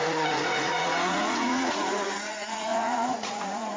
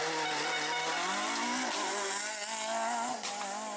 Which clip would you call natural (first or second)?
second